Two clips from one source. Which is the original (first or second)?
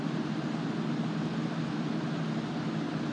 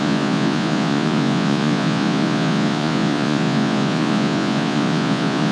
first